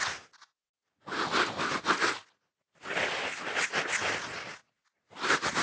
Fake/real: real